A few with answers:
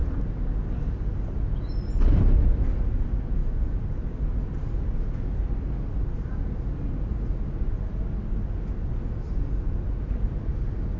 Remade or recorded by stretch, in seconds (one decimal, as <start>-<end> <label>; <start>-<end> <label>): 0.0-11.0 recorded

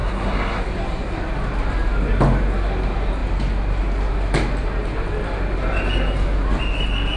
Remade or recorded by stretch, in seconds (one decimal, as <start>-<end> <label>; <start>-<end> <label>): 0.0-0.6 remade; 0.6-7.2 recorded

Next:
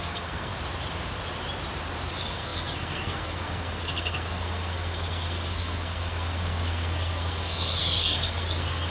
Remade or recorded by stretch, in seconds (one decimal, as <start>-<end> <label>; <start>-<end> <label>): 0.0-0.5 remade; 0.5-2.1 recorded; 2.1-8.9 remade